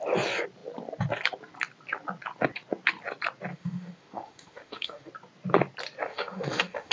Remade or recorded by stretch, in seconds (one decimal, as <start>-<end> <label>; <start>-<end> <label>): 0.0-3.5 recorded; 3.5-5.1 remade; 5.1-6.1 recorded; 6.1-6.9 remade